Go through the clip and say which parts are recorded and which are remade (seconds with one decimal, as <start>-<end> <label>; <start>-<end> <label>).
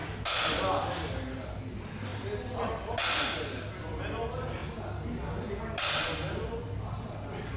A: 0.0-7.6 recorded